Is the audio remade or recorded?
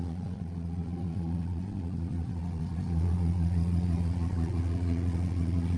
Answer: remade